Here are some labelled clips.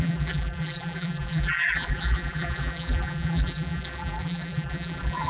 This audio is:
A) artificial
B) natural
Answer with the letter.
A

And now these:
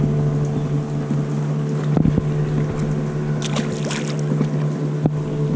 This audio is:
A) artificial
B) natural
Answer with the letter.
B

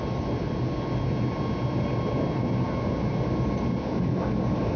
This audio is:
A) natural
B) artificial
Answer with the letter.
A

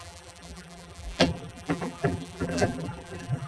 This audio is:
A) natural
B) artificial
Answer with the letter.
B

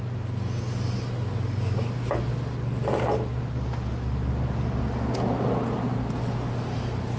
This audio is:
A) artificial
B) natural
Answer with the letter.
B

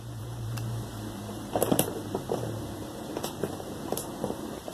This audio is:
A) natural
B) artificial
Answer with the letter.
B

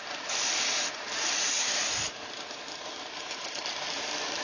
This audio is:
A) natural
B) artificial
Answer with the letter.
B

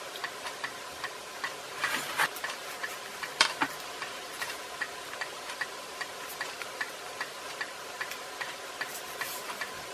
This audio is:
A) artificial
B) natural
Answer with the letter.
A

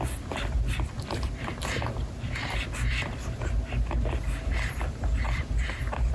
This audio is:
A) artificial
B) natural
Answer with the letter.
A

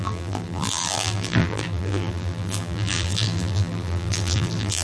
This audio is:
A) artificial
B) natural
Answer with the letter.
A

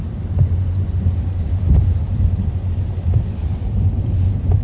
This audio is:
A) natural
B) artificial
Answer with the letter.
B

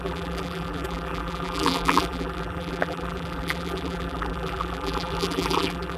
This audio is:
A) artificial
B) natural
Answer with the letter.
A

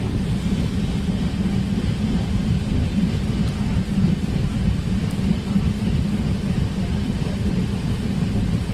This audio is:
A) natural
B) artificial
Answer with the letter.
B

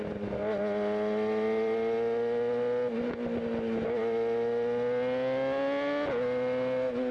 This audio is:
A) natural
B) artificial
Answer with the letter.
A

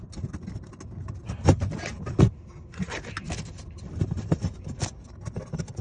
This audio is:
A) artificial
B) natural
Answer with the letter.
B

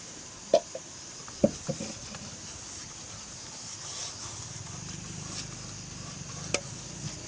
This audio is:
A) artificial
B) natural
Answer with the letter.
B